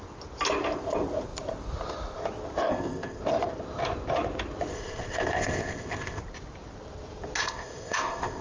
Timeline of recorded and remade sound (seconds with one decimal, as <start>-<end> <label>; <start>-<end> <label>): 0.0-2.7 recorded; 2.7-3.2 remade; 3.2-4.7 recorded; 4.7-6.2 remade; 6.2-7.4 recorded; 7.4-8.4 remade